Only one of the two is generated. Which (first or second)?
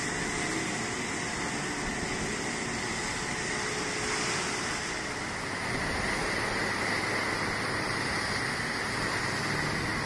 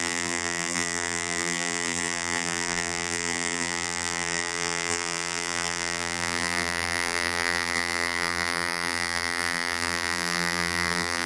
second